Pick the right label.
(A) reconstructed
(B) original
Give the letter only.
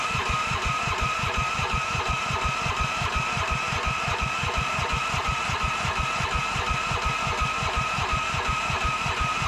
B